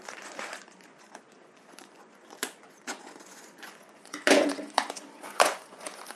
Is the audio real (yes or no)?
no